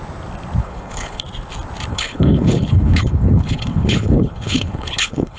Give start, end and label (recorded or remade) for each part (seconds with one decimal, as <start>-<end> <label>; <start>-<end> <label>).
0.0-0.6 recorded; 0.6-1.2 remade; 1.2-1.9 recorded; 1.9-5.4 remade